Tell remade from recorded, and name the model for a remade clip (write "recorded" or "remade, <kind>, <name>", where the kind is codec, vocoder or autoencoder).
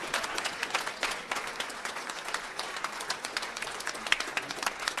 remade, vocoder, Vocos